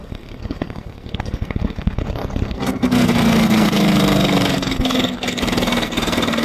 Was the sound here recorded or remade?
remade